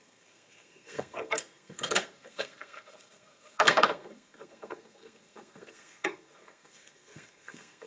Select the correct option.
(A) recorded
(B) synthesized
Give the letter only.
B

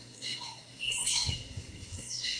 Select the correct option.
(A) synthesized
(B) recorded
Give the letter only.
A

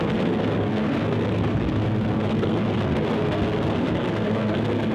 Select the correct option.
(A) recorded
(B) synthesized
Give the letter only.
B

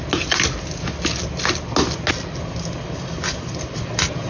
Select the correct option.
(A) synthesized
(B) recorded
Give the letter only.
B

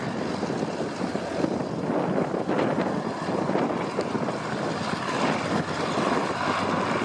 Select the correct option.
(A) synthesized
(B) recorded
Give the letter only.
B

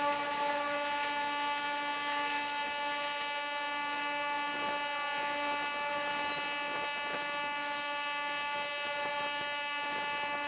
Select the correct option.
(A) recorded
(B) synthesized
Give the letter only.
A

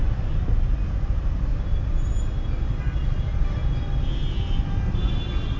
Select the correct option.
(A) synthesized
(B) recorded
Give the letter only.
B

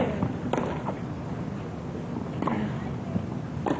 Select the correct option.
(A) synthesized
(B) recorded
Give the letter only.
B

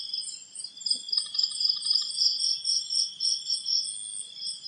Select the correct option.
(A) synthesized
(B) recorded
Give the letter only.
B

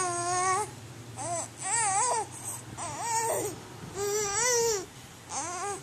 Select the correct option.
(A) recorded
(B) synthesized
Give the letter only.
A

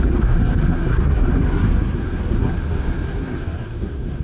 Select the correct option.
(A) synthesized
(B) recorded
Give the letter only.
A